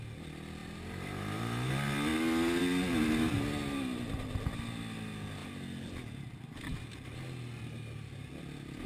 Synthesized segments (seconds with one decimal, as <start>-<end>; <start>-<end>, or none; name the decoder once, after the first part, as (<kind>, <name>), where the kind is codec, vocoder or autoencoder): 0.6-1.7 (vocoder, BigVGAN v2)